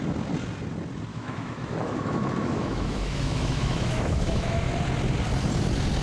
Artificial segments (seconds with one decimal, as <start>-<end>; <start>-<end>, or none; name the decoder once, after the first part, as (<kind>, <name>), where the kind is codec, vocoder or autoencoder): 1.1-4.7 (autoencoder, DAC-VAE)